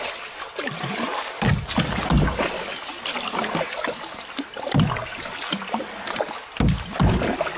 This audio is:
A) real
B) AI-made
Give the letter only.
A